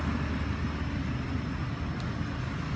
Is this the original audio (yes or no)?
yes